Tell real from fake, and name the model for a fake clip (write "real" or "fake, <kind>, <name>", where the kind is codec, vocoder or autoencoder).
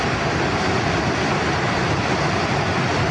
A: real